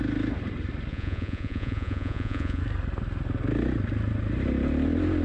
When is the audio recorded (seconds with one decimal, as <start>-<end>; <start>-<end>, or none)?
0.0-0.9; 2.6-5.2